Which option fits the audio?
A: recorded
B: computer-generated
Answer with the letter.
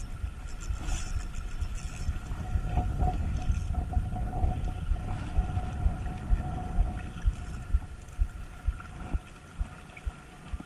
A